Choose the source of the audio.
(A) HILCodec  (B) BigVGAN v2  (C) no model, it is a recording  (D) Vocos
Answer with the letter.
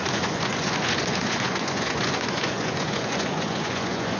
D